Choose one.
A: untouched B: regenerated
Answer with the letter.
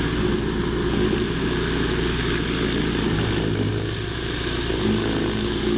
A